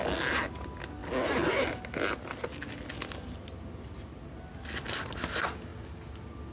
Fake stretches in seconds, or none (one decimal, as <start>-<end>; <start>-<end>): none